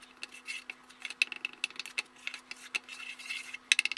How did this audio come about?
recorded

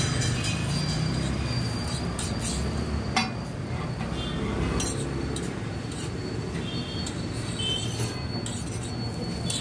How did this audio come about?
recorded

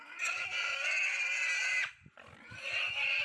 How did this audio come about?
recorded